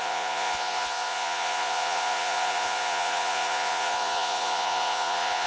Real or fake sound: fake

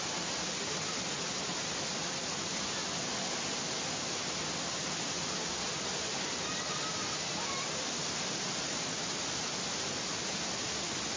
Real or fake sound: real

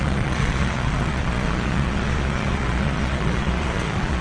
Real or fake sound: fake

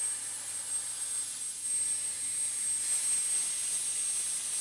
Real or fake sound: real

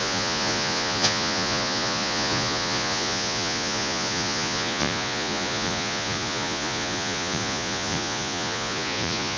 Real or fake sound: fake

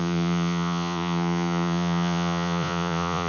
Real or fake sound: fake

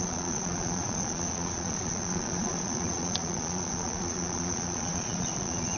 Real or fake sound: fake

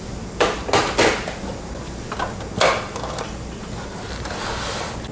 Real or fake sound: real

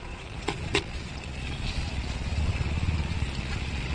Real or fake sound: fake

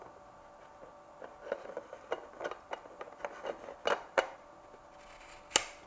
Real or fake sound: real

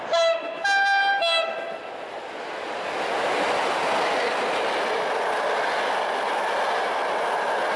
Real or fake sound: real